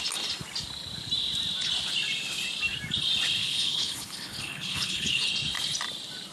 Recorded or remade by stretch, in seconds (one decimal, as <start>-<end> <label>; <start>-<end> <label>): 0.0-3.4 recorded; 3.4-5.3 remade; 5.3-6.3 recorded